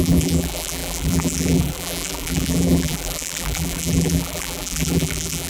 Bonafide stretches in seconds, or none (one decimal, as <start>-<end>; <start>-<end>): none